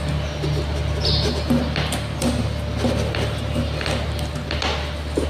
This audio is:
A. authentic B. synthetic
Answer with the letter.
A